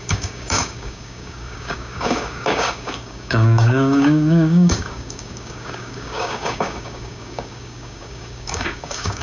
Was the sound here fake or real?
fake